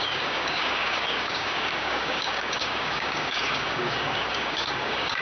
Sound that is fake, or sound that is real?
fake